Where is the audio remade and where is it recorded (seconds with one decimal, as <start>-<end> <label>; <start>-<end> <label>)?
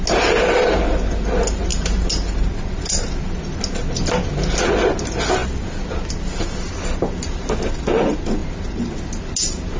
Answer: 0.0-9.8 recorded